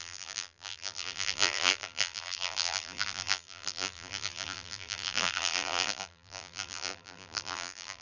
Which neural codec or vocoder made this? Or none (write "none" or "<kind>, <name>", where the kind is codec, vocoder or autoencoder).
vocoder, BigVGAN v2